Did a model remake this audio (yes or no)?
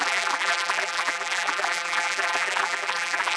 yes